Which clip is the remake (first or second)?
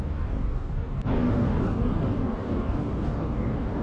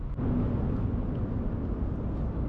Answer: first